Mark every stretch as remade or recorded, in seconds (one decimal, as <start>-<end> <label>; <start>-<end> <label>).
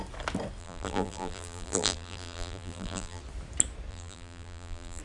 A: 0.0-0.6 recorded; 0.6-3.2 remade; 3.2-3.9 recorded; 3.9-5.0 remade